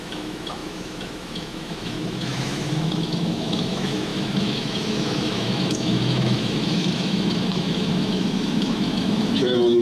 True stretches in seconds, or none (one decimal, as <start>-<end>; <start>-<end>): none